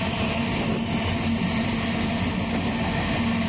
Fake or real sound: real